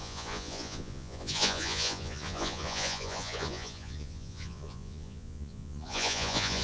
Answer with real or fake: fake